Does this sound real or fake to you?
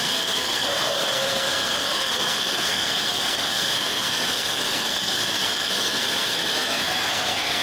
fake